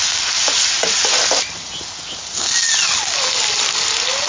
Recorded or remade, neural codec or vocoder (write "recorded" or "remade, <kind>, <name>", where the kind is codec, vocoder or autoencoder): recorded